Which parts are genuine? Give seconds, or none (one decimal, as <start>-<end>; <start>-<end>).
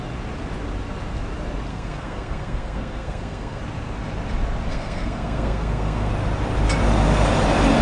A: 0.0-1.7; 3.6-4.7; 6.1-7.8